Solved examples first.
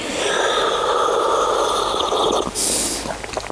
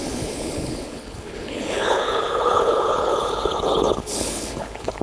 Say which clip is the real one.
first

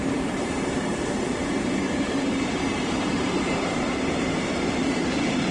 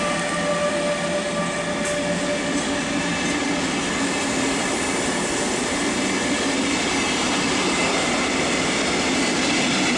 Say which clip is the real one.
second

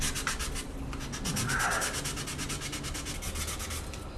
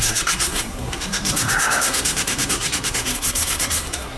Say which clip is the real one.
first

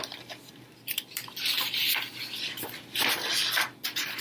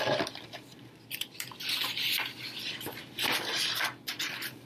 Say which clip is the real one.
first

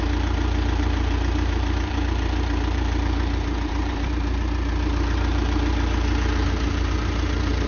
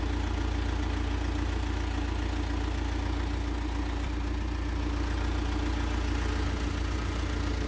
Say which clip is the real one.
second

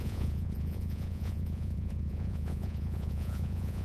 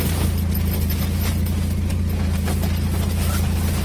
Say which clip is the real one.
second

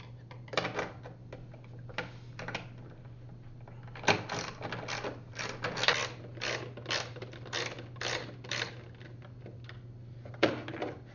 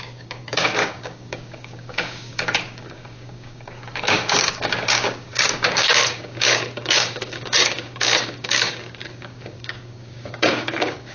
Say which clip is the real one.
first